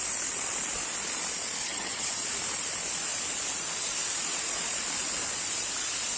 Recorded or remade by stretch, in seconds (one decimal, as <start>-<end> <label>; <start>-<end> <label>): 0.0-1.6 recorded; 1.6-2.1 remade; 2.1-6.2 recorded